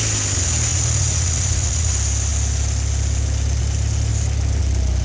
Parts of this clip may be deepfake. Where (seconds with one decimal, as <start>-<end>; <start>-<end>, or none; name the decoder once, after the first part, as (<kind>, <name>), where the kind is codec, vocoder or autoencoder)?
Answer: 0.7-1.9 (vocoder, Vocos)